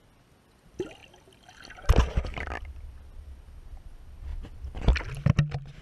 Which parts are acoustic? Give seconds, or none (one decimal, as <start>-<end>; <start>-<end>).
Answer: 0.0-5.8